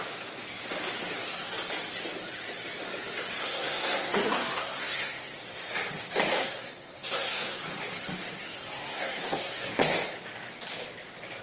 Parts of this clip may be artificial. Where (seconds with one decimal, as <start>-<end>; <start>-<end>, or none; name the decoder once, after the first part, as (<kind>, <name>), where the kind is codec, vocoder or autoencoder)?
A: 3.4-5.4 (codec, SNAC); 6.4-7.6; 8.6-9.7